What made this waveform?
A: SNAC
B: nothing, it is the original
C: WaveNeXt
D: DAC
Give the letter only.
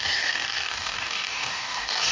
D